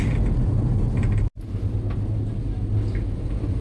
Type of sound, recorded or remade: recorded